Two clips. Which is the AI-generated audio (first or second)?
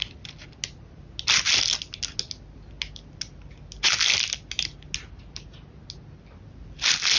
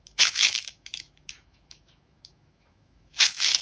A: second